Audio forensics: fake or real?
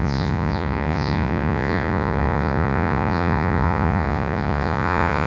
fake